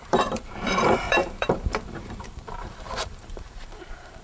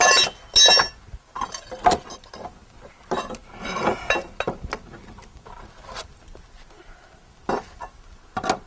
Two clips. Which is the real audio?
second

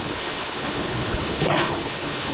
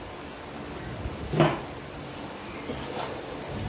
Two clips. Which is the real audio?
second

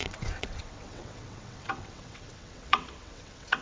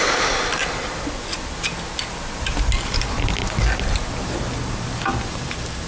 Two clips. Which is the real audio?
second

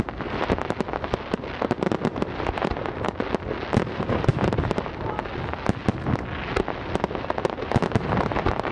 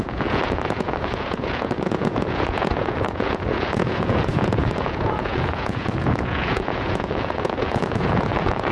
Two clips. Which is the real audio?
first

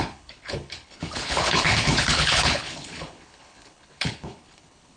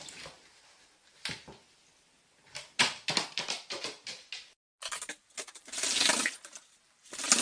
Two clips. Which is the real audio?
second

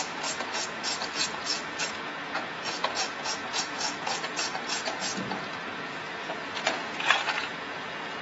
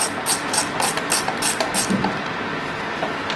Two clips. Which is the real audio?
second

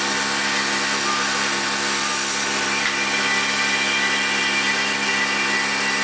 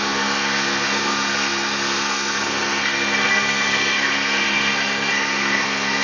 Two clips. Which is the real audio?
first